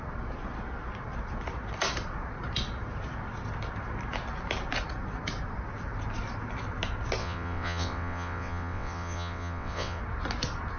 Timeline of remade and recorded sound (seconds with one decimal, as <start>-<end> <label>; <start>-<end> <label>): 0.0-7.2 recorded; 7.2-10.0 remade; 10.0-10.8 recorded

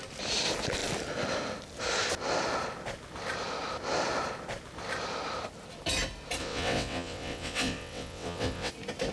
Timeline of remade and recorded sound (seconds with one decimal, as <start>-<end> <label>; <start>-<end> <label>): 0.0-6.4 recorded; 6.4-8.7 remade; 8.7-9.1 recorded

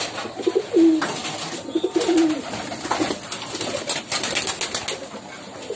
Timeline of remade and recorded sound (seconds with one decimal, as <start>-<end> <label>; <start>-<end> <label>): 0.0-5.8 recorded

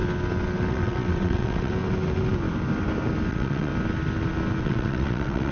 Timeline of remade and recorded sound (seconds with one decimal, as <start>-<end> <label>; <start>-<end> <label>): 0.0-0.7 recorded; 0.7-1.7 remade; 1.7-3.3 recorded; 3.3-3.7 remade; 3.7-4.6 recorded; 4.6-5.5 remade

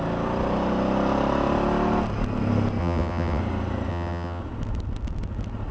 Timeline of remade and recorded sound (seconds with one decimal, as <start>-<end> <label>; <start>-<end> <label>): 0.0-2.8 recorded; 2.8-3.4 remade; 3.4-3.9 recorded; 3.9-4.4 remade; 4.4-5.7 recorded